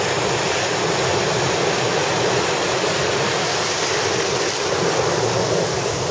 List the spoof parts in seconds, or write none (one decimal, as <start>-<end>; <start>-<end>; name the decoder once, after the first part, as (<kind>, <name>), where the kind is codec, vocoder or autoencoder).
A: none